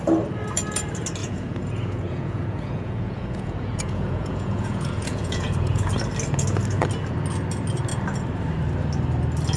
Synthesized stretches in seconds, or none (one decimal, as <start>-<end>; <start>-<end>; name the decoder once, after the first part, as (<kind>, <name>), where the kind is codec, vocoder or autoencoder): 1.2-5.9 (vocoder, Vocos)